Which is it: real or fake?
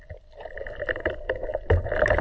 real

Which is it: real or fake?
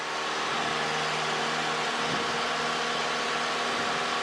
real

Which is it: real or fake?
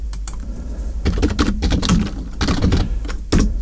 real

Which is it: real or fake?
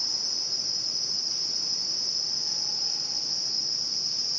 real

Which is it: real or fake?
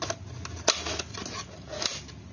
real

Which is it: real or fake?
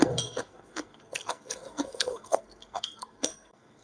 fake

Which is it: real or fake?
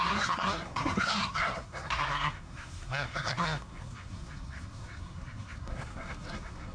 fake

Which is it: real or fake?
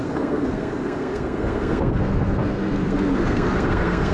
fake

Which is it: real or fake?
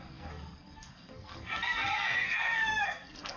fake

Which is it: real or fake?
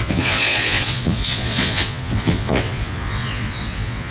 fake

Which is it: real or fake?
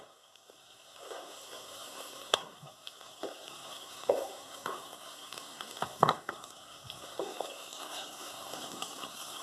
fake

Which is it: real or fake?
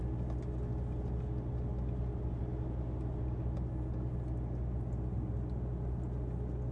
real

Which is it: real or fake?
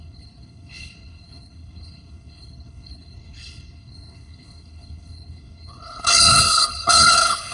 fake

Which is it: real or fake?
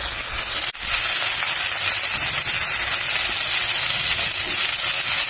real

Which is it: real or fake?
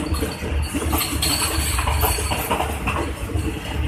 real